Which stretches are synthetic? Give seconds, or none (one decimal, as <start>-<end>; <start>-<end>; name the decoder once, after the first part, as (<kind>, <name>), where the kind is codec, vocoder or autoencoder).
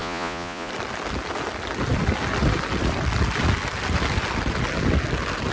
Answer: 0.0-0.7 (vocoder, Vocos)